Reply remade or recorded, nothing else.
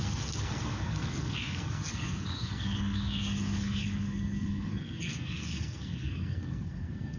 remade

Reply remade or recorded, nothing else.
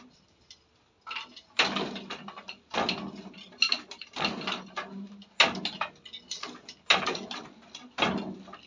recorded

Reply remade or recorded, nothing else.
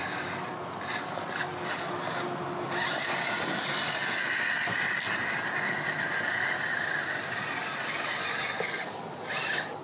recorded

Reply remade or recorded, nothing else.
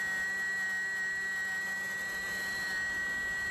recorded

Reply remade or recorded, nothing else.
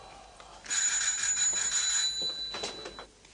recorded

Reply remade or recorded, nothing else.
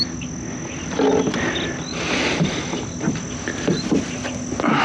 recorded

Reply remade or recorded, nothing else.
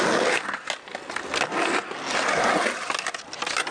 recorded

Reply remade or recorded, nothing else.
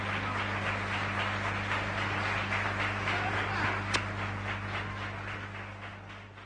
recorded